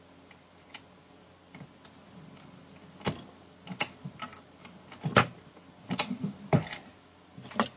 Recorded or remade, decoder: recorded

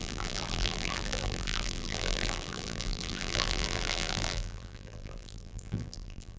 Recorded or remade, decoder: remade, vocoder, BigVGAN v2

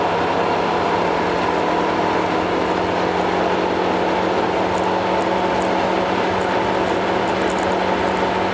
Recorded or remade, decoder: recorded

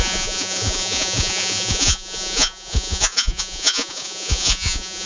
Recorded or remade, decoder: remade, vocoder, Vocos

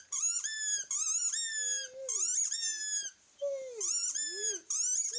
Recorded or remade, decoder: recorded